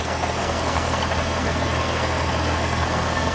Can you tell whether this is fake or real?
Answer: fake